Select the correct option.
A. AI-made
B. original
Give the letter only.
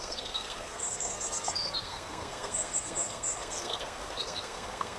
A